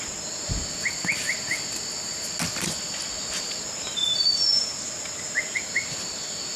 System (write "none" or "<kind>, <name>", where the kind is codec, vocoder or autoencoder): none